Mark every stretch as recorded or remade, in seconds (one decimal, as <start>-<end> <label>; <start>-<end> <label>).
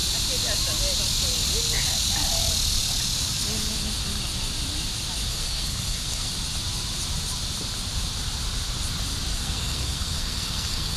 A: 0.0-5.3 recorded; 5.3-6.3 remade; 6.3-9.3 recorded; 9.3-11.0 remade